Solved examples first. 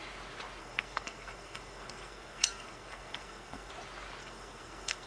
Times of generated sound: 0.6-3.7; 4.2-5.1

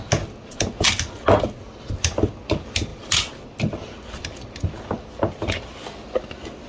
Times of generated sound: none

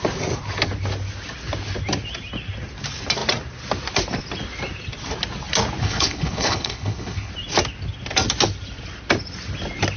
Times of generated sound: 5.8-7.3

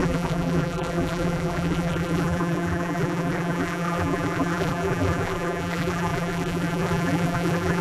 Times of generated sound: 0.0-7.8